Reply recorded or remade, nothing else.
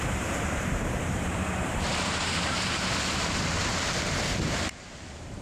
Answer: remade